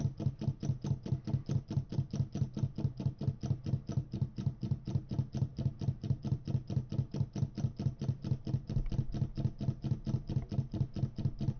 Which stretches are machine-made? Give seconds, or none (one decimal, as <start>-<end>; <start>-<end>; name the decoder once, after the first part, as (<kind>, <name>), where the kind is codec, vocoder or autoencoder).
5.5-6.2 (vocoder, BigVGAN v2)